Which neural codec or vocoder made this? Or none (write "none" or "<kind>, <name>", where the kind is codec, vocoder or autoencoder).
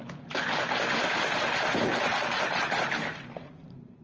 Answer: vocoder, BigVGAN v2